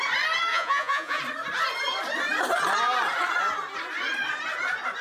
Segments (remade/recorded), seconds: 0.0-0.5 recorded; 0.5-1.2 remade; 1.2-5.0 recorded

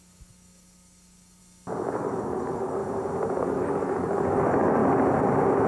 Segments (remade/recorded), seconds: 0.0-1.4 remade; 1.4-2.0 recorded; 2.0-2.8 remade; 2.8-3.4 recorded; 3.4-4.8 remade; 4.8-5.7 recorded

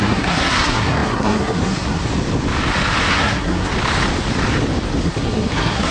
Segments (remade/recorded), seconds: 0.0-2.1 remade; 2.1-3.1 recorded; 3.1-3.7 remade; 3.7-5.0 recorded; 5.0-5.9 remade

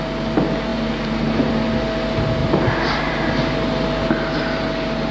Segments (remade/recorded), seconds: 0.0-0.7 recorded; 0.7-1.8 remade; 1.8-2.4 recorded; 2.4-3.1 remade; 3.1-5.1 recorded

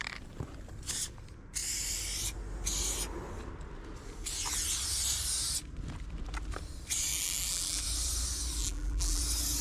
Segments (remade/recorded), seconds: 0.0-7.1 recorded; 7.1-7.8 remade; 7.8-8.6 recorded; 8.6-9.2 remade; 9.2-9.6 recorded

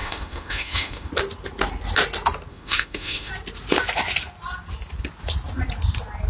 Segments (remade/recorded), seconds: 0.0-1.1 remade; 1.1-2.5 recorded; 2.5-3.3 remade; 3.3-6.3 recorded